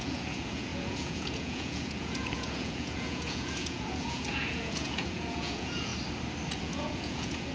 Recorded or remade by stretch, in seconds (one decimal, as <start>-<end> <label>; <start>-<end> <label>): 0.0-5.9 remade; 5.9-6.6 recorded; 6.6-7.5 remade